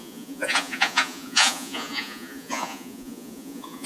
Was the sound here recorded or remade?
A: remade